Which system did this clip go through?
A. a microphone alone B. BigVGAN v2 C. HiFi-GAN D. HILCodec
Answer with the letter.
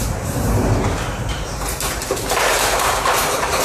B